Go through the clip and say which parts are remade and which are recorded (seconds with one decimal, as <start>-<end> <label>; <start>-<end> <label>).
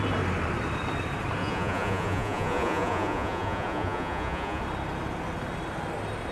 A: 0.0-1.4 recorded; 1.4-4.6 remade; 4.6-6.3 recorded